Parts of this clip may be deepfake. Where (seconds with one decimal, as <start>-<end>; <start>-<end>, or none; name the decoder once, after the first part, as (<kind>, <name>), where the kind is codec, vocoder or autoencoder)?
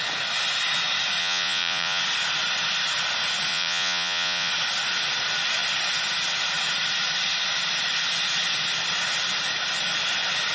1.2-2.0 (vocoder, Vocos); 3.5-4.5